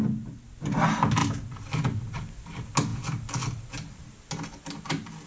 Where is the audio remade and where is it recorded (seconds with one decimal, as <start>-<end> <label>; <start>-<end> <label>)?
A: 0.0-5.3 recorded